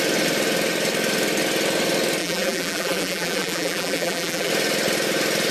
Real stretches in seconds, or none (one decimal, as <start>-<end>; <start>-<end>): 0.0-2.2; 4.5-5.5